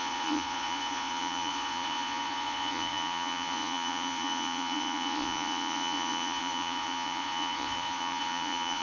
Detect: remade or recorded remade